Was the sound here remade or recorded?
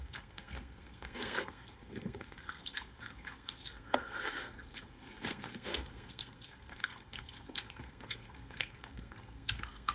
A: remade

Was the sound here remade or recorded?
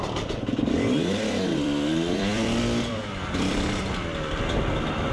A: remade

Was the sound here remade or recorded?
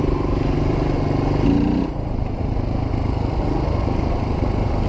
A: recorded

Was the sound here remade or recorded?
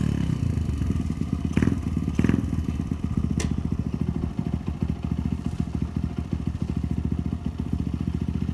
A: recorded